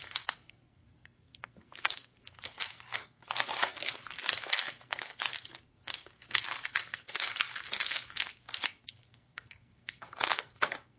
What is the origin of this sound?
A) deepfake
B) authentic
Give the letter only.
A